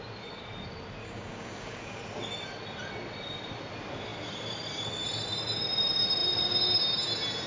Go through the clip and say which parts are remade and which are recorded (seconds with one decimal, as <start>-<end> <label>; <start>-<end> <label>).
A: 0.0-1.0 recorded; 1.0-2.0 remade; 2.0-7.5 recorded